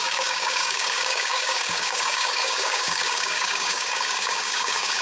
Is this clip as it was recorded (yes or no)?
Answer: no